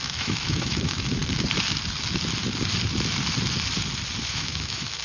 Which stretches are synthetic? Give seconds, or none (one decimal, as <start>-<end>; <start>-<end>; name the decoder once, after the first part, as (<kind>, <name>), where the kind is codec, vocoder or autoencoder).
0.0-1.2 (autoencoder, DAC-VAE); 4.2-5.0

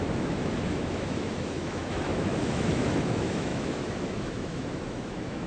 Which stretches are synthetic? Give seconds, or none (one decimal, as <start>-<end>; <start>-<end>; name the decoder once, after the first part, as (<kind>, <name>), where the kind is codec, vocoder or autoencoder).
0.0-5.5 (autoencoder, DAC-VAE)

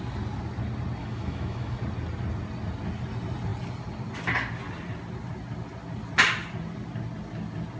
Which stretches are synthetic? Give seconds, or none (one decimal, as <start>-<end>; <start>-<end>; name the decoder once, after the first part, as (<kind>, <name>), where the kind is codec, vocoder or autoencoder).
1.0-1.8 (autoencoder, DAC-VAE)

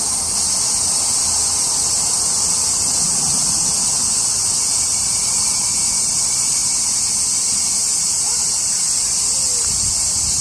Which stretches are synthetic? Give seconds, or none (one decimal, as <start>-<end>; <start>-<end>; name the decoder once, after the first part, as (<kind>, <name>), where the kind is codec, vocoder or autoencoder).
none